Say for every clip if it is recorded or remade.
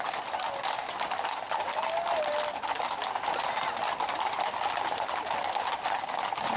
recorded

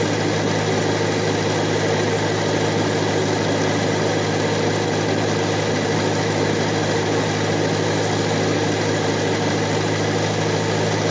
recorded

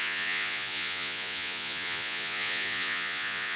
remade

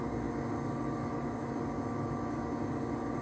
recorded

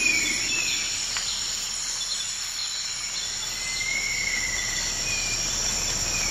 recorded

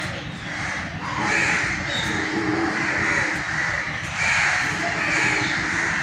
recorded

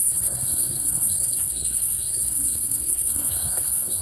remade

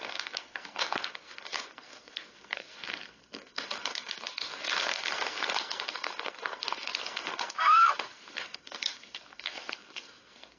remade